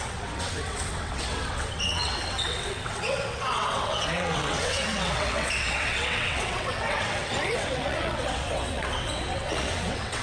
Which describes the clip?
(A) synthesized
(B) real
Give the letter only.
A